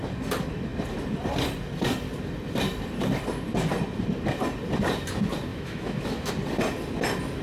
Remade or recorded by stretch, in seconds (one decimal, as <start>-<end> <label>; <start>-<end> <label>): 0.0-5.5 recorded; 5.5-6.3 remade; 6.3-7.4 recorded